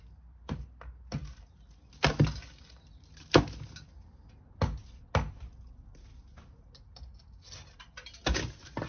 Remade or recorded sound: recorded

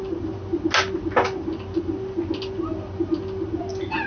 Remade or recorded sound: recorded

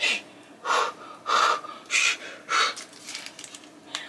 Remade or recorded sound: recorded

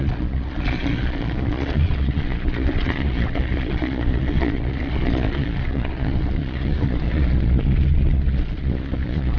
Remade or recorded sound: remade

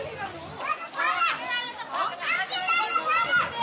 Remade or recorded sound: recorded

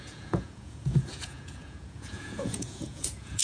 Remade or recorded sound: remade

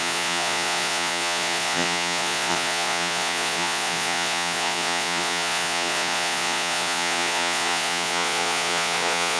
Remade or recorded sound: remade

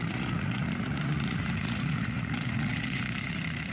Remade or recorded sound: remade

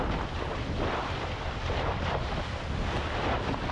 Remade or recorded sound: recorded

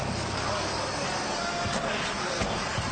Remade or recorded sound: recorded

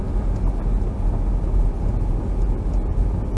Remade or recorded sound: recorded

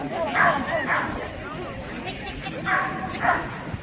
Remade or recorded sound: recorded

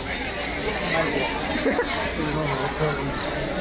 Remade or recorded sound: recorded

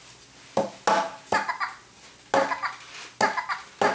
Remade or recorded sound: recorded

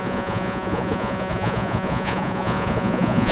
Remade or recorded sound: remade